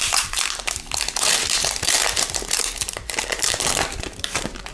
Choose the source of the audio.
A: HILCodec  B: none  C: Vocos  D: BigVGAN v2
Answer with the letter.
D